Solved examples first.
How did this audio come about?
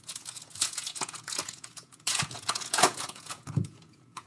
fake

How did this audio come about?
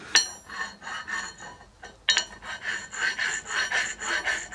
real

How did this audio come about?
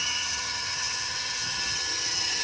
fake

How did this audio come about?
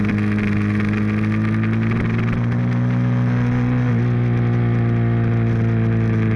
real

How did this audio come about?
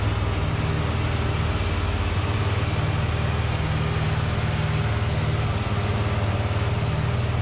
real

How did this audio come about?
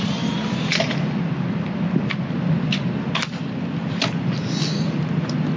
real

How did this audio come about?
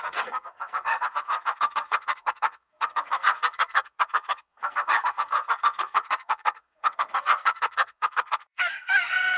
fake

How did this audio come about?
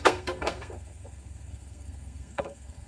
fake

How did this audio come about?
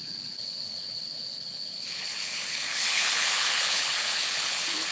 fake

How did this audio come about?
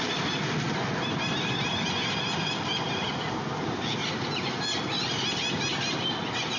real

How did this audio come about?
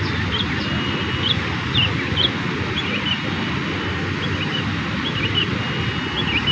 real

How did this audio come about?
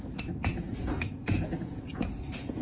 fake